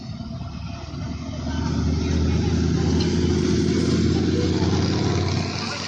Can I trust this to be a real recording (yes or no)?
yes